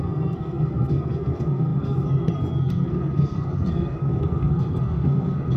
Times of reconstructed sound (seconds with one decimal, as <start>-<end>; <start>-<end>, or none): 0.0-5.6